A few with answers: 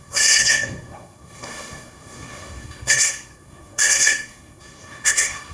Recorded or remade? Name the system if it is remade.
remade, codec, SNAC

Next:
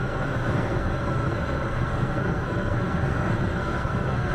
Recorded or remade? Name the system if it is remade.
remade, codec, SNAC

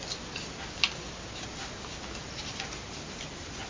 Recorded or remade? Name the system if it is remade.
recorded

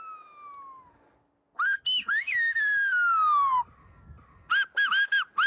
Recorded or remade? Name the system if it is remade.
recorded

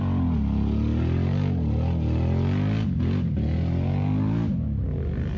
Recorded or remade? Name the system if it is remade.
recorded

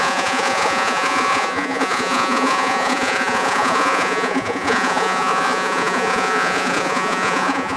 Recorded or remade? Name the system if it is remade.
remade, vocoder, Vocos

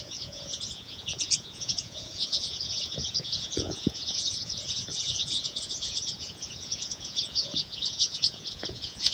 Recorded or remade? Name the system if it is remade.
remade, vocoder, Vocos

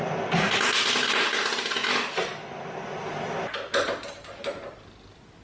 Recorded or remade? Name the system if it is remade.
recorded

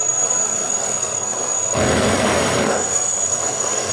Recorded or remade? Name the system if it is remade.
remade, codec, SNAC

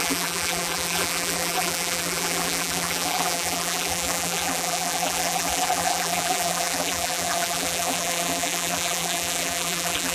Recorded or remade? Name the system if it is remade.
remade, vocoder, BigVGAN v2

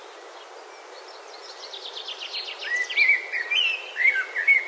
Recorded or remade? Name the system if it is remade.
recorded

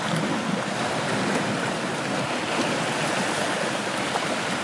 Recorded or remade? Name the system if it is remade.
recorded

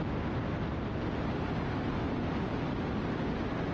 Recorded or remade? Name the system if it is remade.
recorded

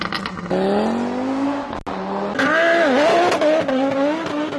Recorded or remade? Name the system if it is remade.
recorded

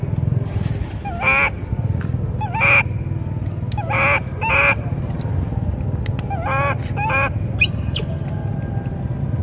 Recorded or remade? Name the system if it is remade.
recorded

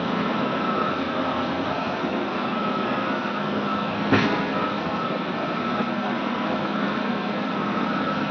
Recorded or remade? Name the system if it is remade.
remade, codec, SNAC